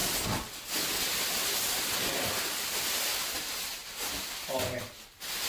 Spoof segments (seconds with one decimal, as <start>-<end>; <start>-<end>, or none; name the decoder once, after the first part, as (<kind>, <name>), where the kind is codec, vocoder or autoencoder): none